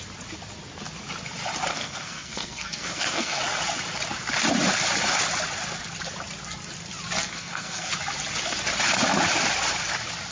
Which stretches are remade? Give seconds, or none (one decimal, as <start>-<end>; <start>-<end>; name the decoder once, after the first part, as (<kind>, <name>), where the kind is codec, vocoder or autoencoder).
1.7-3.4 (codec, SNAC); 7.2-7.9